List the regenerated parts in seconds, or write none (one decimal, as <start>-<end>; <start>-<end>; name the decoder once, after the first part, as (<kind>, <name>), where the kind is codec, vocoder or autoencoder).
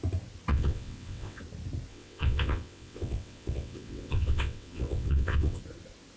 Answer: 0.5-1.4 (vocoder, WaveNeXt); 1.9-5.6